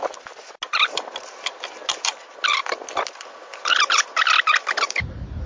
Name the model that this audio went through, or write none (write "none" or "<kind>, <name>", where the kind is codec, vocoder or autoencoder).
none